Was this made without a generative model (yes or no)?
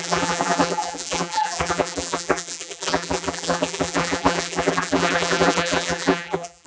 no